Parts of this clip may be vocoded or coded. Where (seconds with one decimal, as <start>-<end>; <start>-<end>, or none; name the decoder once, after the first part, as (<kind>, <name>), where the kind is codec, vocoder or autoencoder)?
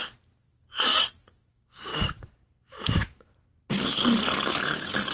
0.5-0.9 (autoencoder, DAC-VAE); 1.5-1.9; 2.7-3.3; 4.5-5.1